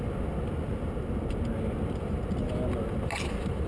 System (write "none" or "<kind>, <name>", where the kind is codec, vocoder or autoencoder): none